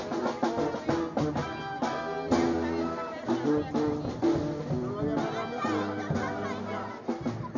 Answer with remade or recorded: recorded